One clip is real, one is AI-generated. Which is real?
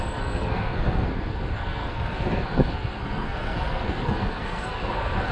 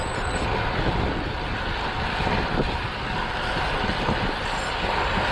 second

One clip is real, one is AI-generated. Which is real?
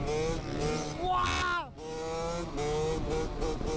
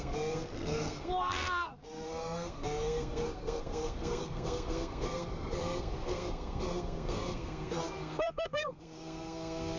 first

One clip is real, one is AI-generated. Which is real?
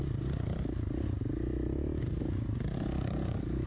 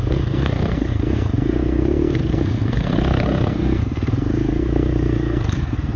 first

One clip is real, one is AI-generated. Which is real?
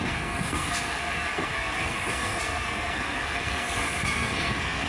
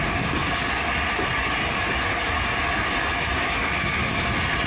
second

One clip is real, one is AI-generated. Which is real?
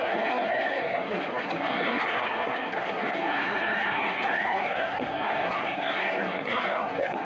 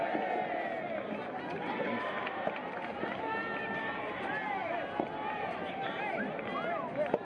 second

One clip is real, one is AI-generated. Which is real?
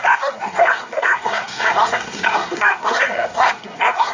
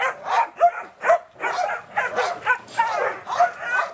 second